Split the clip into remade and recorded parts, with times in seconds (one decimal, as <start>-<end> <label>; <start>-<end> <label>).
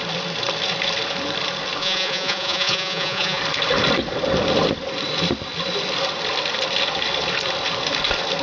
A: 0.0-1.8 recorded; 1.8-3.4 remade; 3.4-8.4 recorded